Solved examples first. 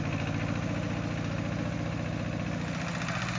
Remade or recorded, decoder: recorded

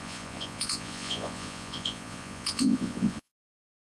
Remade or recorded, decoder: remade, vocoder, Vocos